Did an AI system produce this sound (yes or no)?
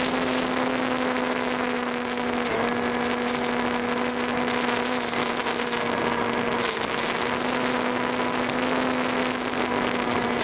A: no